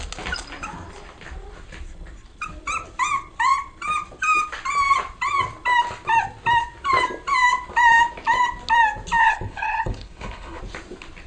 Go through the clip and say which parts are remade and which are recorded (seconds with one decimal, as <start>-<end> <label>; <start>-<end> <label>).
0.0-9.2 recorded; 9.2-10.6 remade; 10.6-11.3 recorded